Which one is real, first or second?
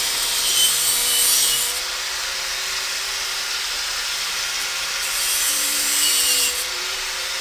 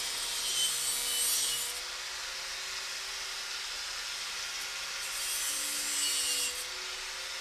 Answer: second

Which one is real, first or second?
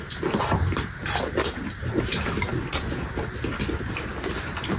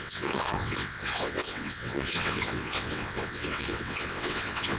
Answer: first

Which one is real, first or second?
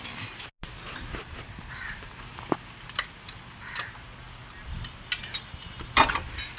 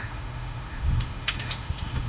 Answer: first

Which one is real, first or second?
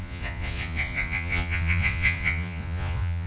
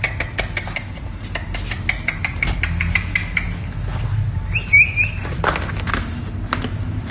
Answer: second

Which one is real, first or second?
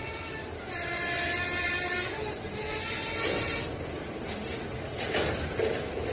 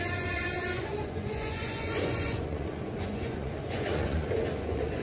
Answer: first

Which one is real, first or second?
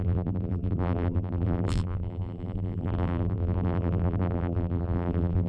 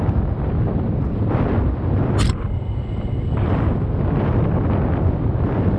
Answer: second